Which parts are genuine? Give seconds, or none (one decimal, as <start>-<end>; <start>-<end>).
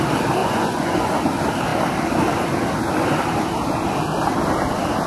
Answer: 0.0-0.4; 1.1-5.1